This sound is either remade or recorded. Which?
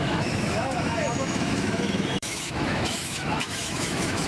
remade